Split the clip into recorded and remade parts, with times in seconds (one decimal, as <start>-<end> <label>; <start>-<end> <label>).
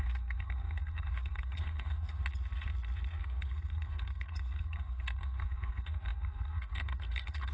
0.0-2.2 remade; 2.2-3.2 recorded; 3.2-7.5 remade